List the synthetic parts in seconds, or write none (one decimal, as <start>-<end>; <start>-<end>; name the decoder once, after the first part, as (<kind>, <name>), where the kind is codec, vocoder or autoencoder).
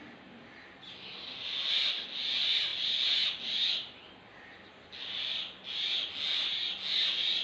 none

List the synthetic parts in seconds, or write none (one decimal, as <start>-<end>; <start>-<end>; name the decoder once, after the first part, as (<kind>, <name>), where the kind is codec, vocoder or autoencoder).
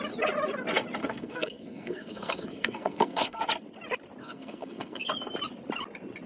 1.0-3.4 (codec, SNAC); 4.2-5.0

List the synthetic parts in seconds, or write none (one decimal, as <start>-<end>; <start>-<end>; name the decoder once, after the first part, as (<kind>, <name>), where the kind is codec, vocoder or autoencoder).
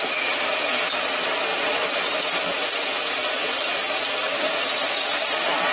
1.5-4.9 (vocoder, BigVGAN v2)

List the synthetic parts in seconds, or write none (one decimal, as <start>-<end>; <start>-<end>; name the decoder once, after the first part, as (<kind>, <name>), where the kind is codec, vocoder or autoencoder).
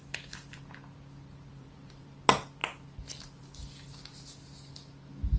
1.5-2.1 (vocoder, BigVGAN v2)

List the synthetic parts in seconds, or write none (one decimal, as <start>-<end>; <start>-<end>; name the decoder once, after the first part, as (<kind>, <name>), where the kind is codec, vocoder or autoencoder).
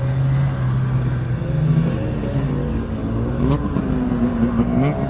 2.6-4.1 (codec, DAC)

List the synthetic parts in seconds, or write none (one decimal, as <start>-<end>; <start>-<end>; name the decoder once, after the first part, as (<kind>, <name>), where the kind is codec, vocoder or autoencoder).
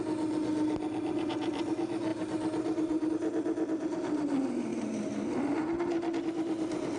4.7-6.2 (vocoder, BigVGAN v2)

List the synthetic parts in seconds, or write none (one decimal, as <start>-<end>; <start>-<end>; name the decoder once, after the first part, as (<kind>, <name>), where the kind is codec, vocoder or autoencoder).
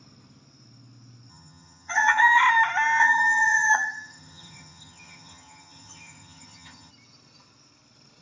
1.3-2.4 (vocoder, HiFi-GAN); 3.0-6.9